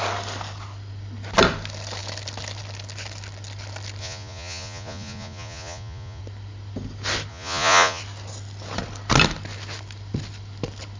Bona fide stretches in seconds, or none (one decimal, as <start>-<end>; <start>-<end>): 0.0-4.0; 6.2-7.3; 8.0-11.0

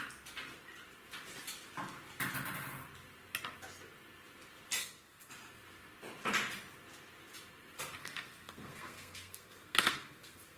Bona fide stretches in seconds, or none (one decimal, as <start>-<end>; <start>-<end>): 0.0-4.8; 5.3-8.0

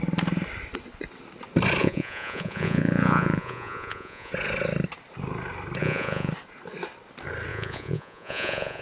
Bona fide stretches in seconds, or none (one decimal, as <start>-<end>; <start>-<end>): 0.0-1.8; 4.3-5.8; 6.3-7.5